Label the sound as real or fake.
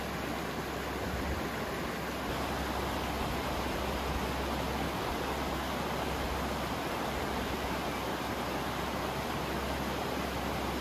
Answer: real